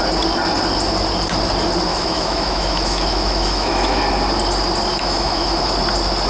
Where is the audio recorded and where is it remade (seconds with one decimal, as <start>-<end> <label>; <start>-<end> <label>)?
0.0-1.9 recorded; 1.9-4.0 remade; 4.0-4.9 recorded; 4.9-5.7 remade; 5.7-6.3 recorded